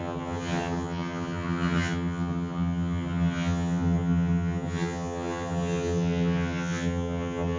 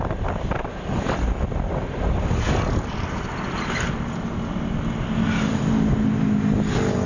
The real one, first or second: second